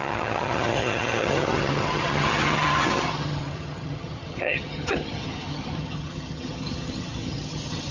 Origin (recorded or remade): remade